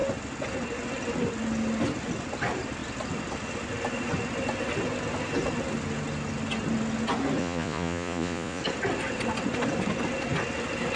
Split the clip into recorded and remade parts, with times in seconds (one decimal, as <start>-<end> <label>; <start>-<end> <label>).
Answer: 0.0-7.4 recorded; 7.4-8.6 remade; 8.6-11.0 recorded